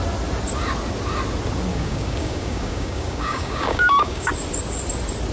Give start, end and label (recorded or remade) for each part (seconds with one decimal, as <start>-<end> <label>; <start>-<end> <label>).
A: 0.0-1.7 recorded; 1.7-4.3 remade; 4.3-5.3 recorded